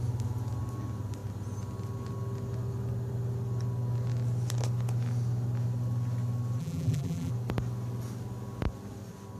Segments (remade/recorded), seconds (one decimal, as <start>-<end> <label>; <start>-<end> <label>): 0.0-6.6 recorded; 6.6-7.3 remade; 7.3-9.4 recorded